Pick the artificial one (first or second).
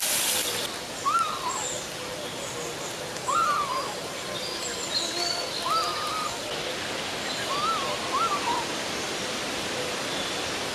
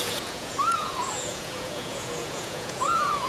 second